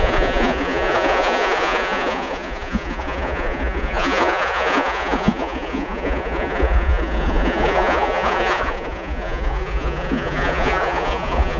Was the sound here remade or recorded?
remade